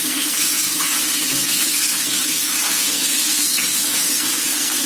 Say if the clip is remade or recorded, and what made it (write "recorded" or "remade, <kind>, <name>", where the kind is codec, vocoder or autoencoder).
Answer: remade, codec, SNAC